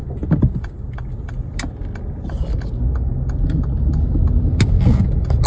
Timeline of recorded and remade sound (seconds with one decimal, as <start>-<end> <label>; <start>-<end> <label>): 0.0-1.1 remade; 1.1-5.5 recorded